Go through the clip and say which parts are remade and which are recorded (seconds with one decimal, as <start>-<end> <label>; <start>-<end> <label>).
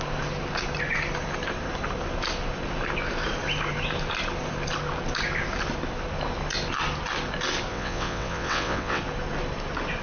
0.0-7.7 recorded; 7.7-9.0 remade; 9.0-10.0 recorded